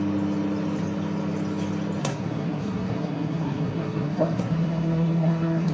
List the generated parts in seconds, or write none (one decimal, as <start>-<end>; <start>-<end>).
2.0-5.7